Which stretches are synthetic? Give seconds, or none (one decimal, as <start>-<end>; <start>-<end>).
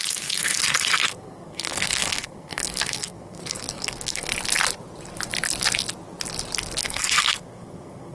0.0-4.3; 6.8-8.1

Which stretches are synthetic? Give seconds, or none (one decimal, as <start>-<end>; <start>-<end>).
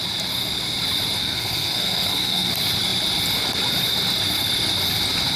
1.2-2.5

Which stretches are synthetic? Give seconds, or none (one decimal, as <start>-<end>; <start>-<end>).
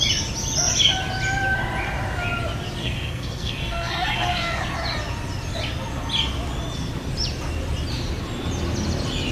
2.8-4.6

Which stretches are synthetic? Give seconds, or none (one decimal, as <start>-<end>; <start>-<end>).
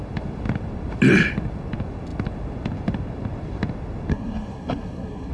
4.1-5.3